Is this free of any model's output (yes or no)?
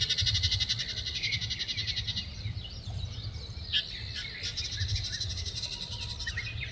yes